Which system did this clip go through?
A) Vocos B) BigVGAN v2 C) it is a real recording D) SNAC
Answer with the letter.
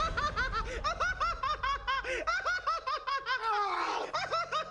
C